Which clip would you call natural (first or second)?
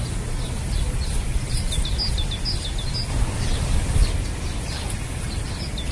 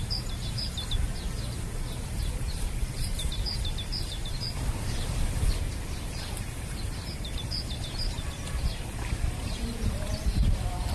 first